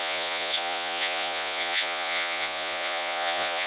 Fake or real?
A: fake